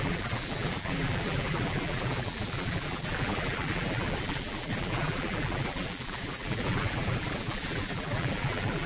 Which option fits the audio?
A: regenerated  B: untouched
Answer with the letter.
A